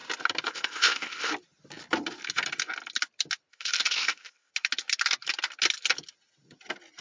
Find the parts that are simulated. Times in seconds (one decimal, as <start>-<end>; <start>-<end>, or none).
0.5-1.3; 3.5-4.5